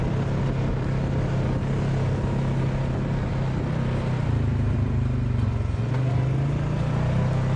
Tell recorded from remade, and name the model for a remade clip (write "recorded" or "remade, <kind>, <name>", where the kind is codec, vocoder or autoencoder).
recorded